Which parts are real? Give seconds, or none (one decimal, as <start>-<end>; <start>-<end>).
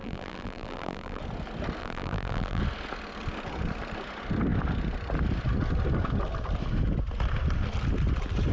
1.2-1.8; 2.6-8.5